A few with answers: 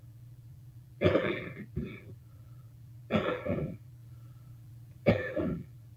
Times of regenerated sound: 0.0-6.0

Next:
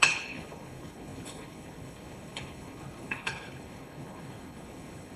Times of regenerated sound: 0.0-5.2

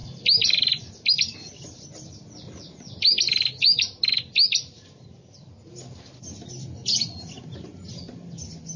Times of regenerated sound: none

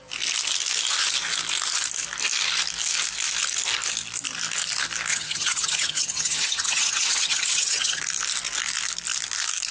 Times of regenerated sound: 5.1-8.0

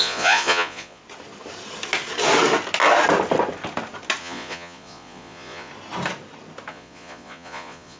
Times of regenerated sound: 0.0-1.0; 4.2-5.7; 6.7-8.0

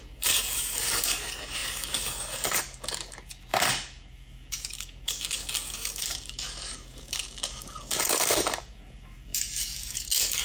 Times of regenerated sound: 0.0-10.4

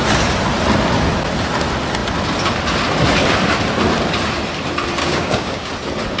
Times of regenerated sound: 5.0-5.7